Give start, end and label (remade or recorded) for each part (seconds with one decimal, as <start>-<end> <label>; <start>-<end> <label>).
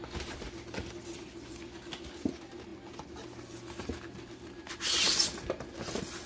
0.0-6.3 recorded